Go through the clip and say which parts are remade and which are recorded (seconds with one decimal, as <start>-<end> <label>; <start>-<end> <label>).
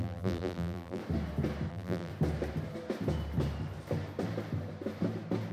0.0-1.0 remade; 1.0-1.7 recorded; 1.7-2.1 remade; 2.1-5.5 recorded